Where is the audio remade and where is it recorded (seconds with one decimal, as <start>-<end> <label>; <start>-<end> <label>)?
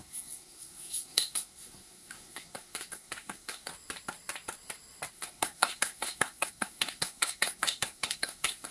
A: 0.0-3.7 remade; 3.7-5.1 recorded; 5.1-8.7 remade